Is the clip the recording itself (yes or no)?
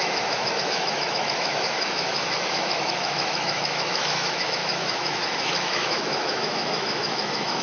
no